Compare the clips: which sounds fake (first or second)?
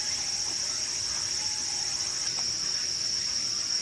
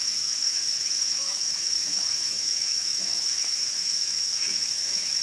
second